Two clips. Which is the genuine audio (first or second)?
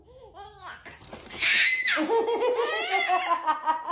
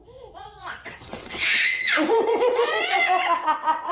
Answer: first